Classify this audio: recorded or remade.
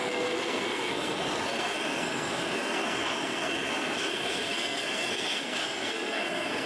remade